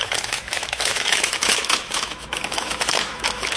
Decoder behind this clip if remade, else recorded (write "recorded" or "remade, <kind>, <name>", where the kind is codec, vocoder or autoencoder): remade, autoencoder, DAC-VAE